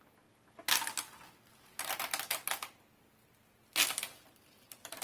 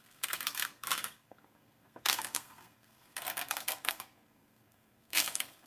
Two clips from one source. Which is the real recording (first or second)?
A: first